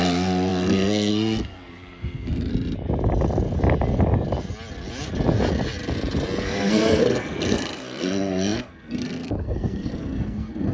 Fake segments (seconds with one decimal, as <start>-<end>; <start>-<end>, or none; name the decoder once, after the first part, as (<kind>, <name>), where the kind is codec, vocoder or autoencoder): 0.0-2.5 (codec, SNAC); 6.4-10.7